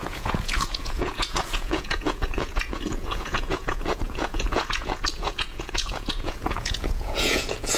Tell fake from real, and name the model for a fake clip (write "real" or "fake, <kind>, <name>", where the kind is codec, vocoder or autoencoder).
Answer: fake, vocoder, Vocos